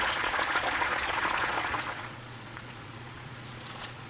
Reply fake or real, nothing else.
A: fake